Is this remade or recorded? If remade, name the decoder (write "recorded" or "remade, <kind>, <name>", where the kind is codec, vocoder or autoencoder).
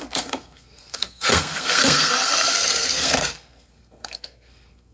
remade, codec, SNAC